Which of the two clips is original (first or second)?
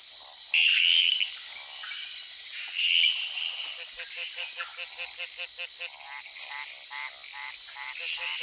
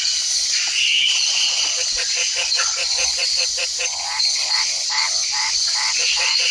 first